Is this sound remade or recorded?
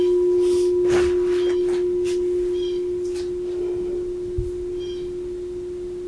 recorded